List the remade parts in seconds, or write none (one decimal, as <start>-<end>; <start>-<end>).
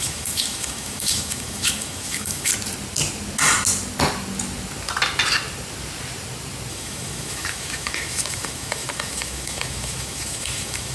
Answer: 0.0-2.5; 6.7-10.9